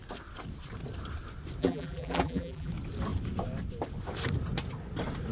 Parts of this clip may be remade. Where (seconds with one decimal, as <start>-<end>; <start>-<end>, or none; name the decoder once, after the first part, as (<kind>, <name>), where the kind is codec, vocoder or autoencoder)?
1.6-2.7 (vocoder, BigVGAN v2)